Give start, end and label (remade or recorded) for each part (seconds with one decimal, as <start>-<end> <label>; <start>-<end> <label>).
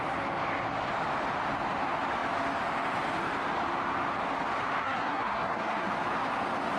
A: 0.0-4.8 recorded; 4.8-5.9 remade; 5.9-6.8 recorded